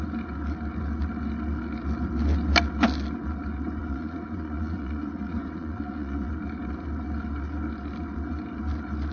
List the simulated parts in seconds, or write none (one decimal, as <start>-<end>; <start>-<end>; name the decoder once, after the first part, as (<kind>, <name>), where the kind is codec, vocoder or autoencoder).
3.8-6.3 (vocoder, Vocos)